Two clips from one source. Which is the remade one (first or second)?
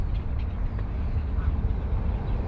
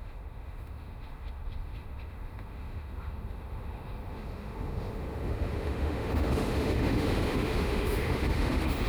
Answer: second